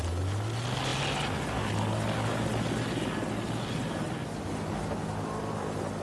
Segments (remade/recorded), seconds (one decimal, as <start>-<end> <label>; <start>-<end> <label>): 0.0-6.0 recorded